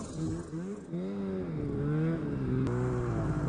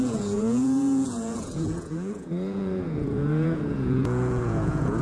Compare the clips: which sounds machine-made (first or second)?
second